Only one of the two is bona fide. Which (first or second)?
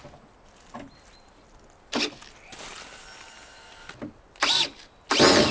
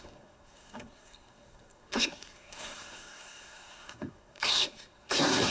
first